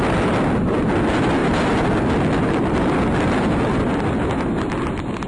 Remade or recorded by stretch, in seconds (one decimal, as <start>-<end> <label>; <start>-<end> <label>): 0.0-5.3 recorded